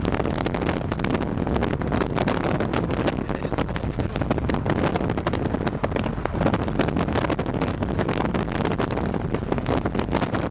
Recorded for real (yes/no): yes